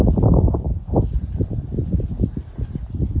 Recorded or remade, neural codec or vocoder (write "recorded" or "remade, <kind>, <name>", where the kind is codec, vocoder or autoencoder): recorded